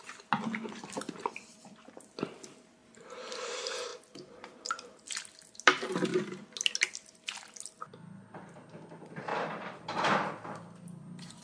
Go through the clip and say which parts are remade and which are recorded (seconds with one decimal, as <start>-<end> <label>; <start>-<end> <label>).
0.0-2.8 recorded; 2.8-3.3 remade; 3.3-9.3 recorded; 9.3-10.1 remade; 10.1-11.4 recorded